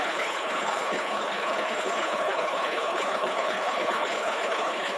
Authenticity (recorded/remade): remade